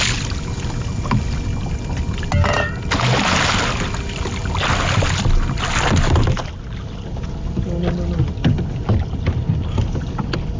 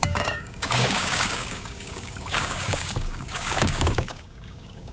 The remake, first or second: second